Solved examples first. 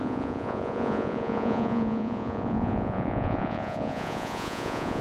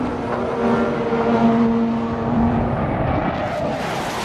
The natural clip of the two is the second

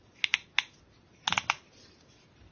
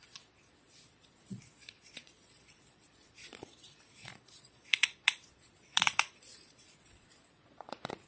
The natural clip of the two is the first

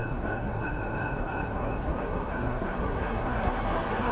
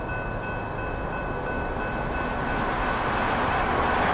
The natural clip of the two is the second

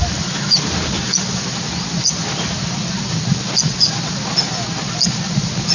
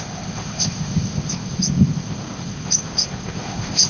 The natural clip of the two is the first